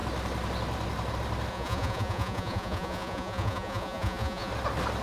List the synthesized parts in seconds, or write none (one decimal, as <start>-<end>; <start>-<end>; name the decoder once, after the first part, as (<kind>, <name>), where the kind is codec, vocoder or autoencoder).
1.5-4.5 (vocoder, Vocos)